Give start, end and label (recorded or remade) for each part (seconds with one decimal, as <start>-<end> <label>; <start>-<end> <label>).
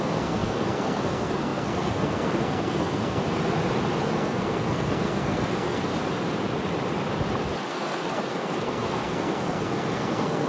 0.0-3.2 remade; 3.2-4.0 recorded; 4.0-5.9 remade; 5.9-7.7 recorded; 7.7-10.5 remade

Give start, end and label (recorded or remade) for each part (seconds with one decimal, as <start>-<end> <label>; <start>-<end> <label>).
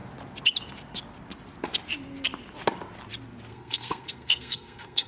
0.0-3.5 recorded; 3.5-5.1 remade